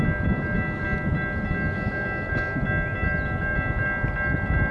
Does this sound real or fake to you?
real